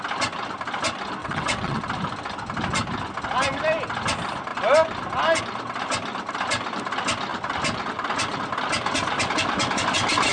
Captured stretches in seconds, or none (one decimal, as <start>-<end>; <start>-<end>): 0.0-1.2; 1.8-10.3